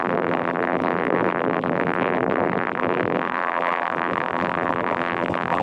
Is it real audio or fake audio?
fake